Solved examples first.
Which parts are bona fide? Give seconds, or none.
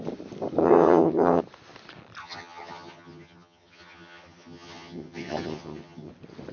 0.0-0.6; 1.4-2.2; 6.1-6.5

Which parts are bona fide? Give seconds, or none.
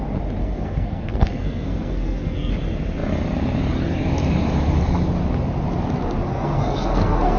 0.0-0.4; 2.5-6.3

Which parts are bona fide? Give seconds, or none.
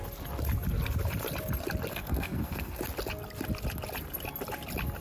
0.0-1.9; 2.8-5.0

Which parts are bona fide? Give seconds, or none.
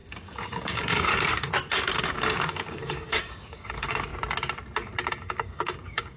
1.1-2.0; 4.1-5.1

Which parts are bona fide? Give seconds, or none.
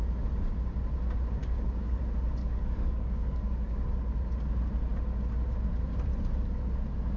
0.0-1.4; 2.0-2.4; 3.8-7.2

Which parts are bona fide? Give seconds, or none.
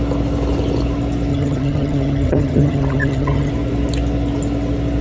0.0-1.3; 3.5-5.0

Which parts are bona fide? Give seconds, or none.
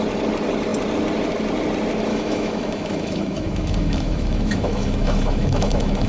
0.0-2.1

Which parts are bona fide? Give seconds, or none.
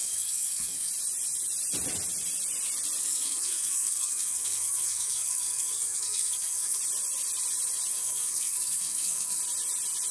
0.9-3.0; 6.8-7.9; 9.4-10.1